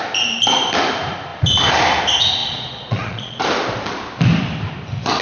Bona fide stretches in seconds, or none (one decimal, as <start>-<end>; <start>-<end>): 0.0-2.4; 3.4-5.2